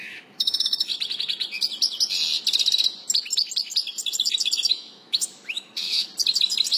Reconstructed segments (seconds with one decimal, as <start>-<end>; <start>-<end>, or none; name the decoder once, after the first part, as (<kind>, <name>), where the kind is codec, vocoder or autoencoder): 0.0-0.9 (autoencoder, DAC-VAE); 4.7-6.1